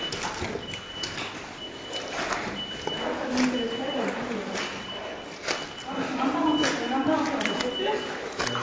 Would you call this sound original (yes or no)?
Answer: yes